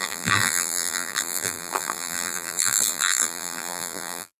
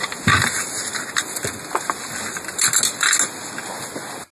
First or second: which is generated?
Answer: first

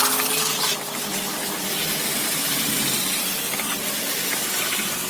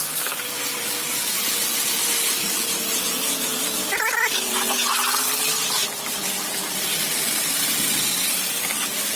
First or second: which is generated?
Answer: second